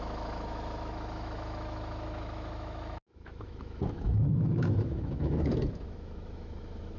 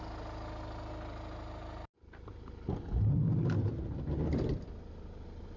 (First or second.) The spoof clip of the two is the first